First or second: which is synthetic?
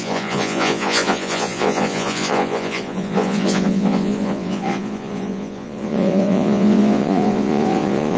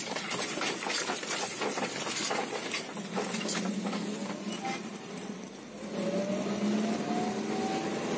first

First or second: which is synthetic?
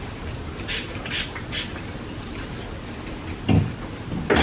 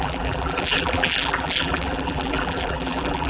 second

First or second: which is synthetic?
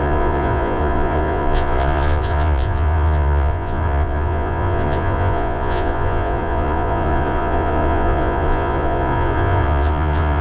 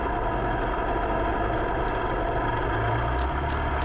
first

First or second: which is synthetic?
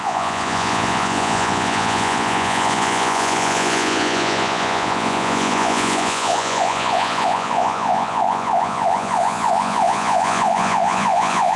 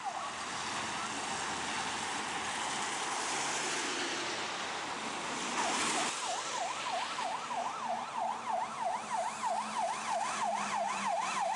first